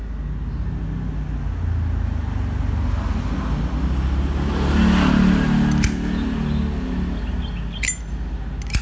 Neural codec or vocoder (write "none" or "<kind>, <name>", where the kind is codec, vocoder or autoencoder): none